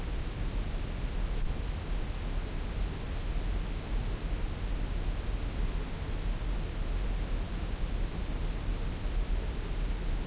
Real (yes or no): yes